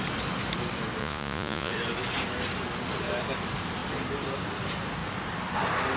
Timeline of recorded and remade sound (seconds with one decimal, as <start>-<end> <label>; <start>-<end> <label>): 0.0-1.0 recorded; 1.0-1.7 remade; 1.7-6.0 recorded